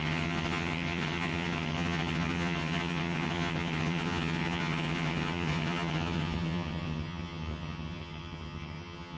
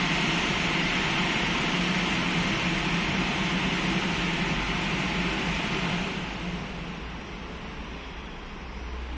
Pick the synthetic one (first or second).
first